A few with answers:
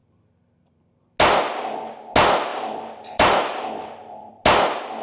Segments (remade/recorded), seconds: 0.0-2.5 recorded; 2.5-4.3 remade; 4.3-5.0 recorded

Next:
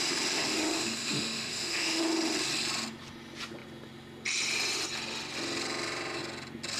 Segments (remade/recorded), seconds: 0.0-0.5 recorded; 0.5-2.0 remade; 2.0-6.8 recorded